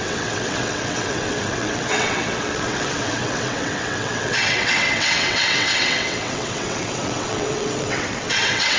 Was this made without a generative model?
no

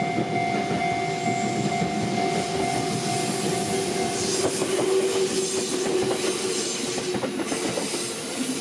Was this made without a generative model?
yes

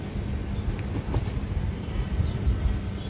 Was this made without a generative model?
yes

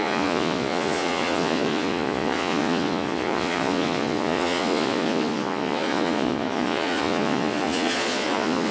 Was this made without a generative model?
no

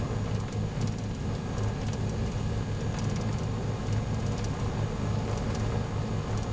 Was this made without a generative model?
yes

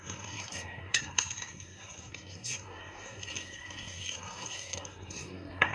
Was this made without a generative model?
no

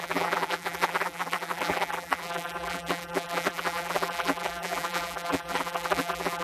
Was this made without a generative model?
no